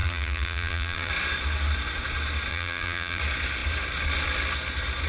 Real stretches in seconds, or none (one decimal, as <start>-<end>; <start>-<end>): 1.1-2.5; 3.2-5.1